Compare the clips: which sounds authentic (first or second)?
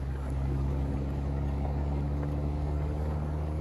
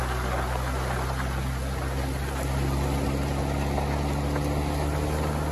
second